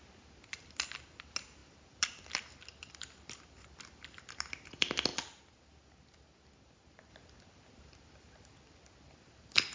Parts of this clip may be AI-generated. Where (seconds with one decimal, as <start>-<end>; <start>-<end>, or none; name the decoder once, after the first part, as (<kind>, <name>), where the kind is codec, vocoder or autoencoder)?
none